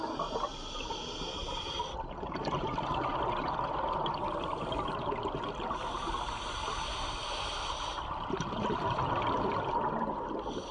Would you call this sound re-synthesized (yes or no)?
no